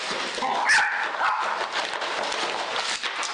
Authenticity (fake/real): real